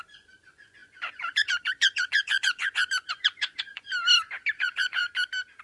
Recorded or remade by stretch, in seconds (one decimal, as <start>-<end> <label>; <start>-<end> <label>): 0.0-3.9 remade; 3.9-4.5 recorded; 4.5-5.0 remade; 5.0-5.6 recorded